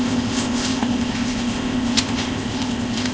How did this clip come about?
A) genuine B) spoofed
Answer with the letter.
B